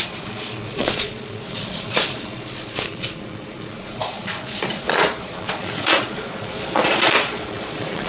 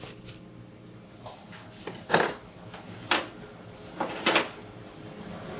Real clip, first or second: second